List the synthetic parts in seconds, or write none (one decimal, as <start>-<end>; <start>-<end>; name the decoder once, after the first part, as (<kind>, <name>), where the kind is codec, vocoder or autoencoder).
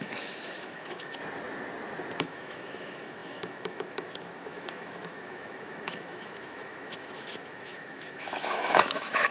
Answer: 0.0-1.2 (autoencoder, DAC-VAE); 2.2-9.3